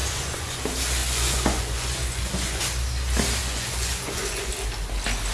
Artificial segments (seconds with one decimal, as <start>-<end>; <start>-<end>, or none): 0.0-0.6; 1.0-2.6; 3.4-4.5